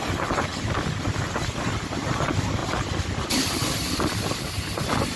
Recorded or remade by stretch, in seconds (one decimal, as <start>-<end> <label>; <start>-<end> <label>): 0.0-5.2 recorded